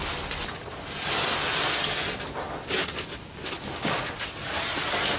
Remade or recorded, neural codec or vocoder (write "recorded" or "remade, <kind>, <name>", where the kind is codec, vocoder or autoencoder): recorded